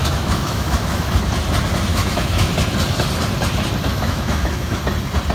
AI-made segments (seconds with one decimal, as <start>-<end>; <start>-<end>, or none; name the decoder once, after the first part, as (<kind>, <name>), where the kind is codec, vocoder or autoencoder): 0.0-1.1 (autoencoder, DAC-VAE); 1.9-2.5; 3.9-4.8